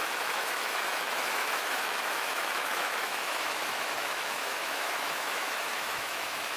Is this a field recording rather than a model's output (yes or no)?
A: no